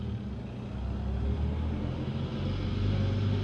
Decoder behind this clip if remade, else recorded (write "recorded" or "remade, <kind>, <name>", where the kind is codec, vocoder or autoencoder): recorded